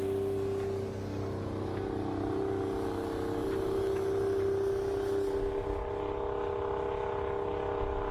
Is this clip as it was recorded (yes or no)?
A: yes